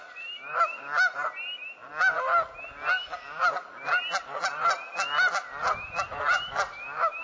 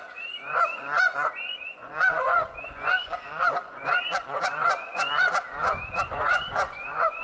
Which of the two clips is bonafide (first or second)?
first